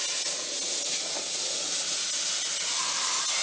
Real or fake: real